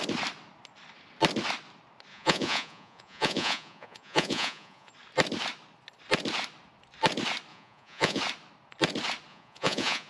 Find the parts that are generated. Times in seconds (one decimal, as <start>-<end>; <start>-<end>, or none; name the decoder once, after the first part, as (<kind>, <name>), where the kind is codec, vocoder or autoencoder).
2.1-4.9 (vocoder, Vocos); 7.5-8.2; 9.3-10.1